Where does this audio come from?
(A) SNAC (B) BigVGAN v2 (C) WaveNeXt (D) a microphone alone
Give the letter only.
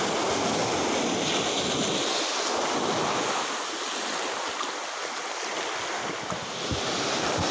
D